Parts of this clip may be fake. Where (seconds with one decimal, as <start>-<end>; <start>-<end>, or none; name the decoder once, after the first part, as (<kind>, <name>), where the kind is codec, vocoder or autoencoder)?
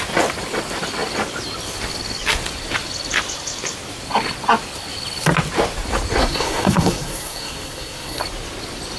6.2-8.2 (codec, SNAC)